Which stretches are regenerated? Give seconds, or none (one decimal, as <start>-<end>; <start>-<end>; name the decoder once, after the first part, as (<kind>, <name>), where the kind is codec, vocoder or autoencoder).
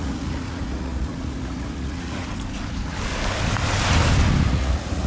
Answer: 0.0-2.3 (vocoder, Vocos); 4.5-5.1